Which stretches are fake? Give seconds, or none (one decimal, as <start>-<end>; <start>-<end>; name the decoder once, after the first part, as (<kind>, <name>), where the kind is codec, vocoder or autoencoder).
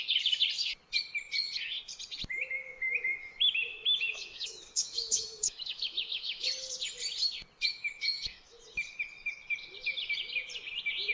3.2-6.5 (autoencoder, DAC-VAE); 7.7-8.6